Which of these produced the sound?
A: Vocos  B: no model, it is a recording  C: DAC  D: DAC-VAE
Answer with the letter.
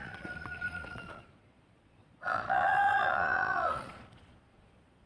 A